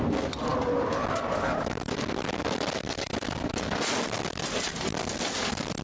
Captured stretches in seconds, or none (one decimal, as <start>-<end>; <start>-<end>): 0.0-5.8